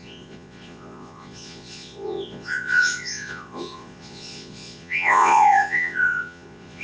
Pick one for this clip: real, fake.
fake